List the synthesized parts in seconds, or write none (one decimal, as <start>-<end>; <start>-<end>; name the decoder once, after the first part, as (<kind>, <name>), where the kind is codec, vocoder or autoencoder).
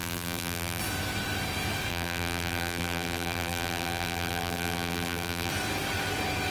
0.0-0.8 (vocoder, BigVGAN v2); 1.9-5.5